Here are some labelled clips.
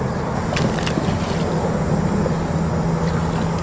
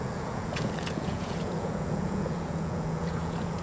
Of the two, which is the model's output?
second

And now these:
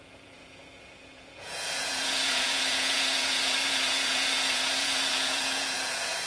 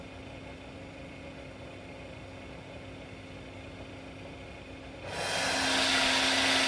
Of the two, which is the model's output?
first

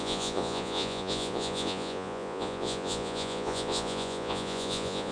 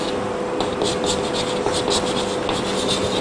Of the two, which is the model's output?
first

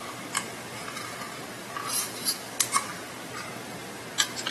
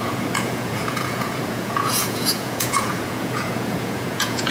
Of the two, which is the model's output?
second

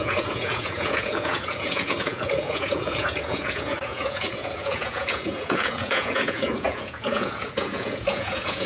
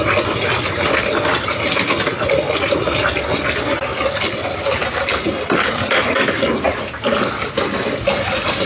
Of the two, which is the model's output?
first